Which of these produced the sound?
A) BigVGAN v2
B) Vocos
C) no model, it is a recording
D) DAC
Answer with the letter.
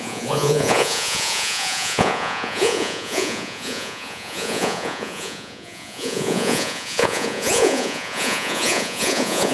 B